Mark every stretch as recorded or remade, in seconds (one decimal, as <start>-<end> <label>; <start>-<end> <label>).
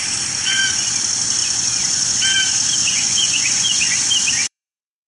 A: 0.0-0.4 recorded; 0.4-0.9 remade; 0.9-1.4 recorded; 1.4-2.2 remade; 2.2-2.8 recorded; 2.8-4.0 remade; 4.0-4.4 recorded; 4.4-5.1 remade